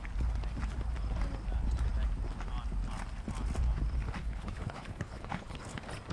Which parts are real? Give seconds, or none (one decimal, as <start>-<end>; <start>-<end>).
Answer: 0.0-4.2; 5.6-6.1